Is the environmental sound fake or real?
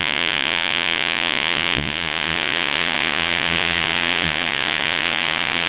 fake